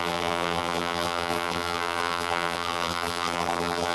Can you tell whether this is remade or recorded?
remade